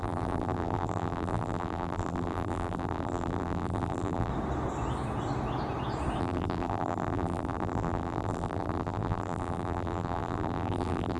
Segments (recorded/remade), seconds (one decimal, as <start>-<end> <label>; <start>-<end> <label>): 0.0-4.3 remade; 4.3-6.2 recorded; 6.2-11.2 remade